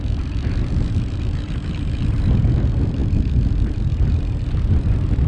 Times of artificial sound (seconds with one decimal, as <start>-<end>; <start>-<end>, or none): none